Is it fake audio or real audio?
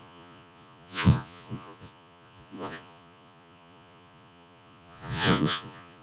fake